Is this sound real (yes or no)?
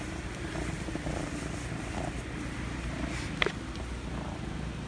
yes